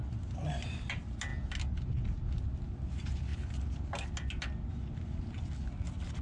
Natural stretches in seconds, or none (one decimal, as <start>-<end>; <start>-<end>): 0.0-6.2